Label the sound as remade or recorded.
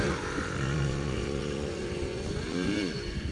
remade